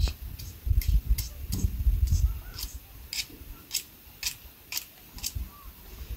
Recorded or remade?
recorded